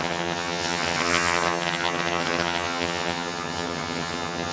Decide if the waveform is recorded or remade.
remade